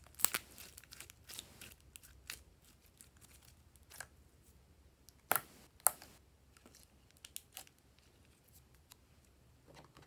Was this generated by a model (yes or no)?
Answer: no